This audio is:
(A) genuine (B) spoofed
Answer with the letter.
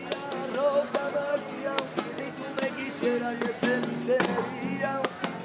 A